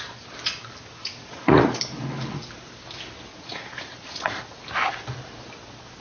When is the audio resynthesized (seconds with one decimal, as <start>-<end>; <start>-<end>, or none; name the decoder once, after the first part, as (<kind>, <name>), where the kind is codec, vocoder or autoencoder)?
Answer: 1.0-1.8 (vocoder, Vocos); 3.3-4.6